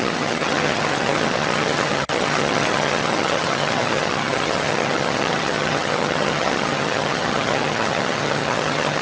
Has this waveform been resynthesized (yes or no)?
yes